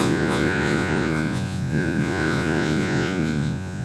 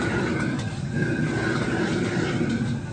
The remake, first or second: first